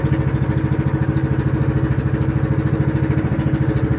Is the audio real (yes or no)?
yes